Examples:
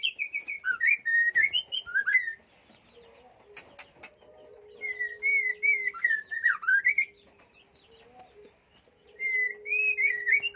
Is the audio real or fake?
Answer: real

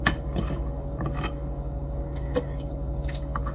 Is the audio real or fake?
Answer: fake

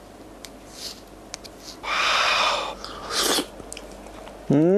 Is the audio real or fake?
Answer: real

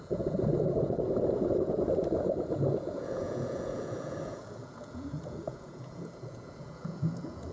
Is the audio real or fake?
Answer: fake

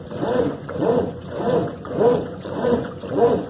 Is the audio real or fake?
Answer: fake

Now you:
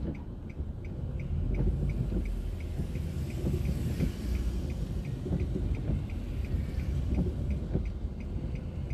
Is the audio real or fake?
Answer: real